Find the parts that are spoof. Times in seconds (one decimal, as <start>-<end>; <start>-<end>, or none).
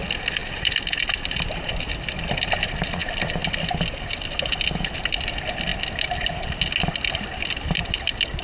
none